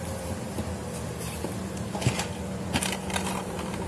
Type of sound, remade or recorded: recorded